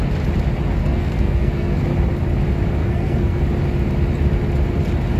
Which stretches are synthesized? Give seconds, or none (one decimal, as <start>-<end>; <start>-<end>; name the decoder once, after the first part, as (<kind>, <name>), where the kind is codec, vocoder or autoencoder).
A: 0.8-1.8 (codec, SNAC); 2.8-3.4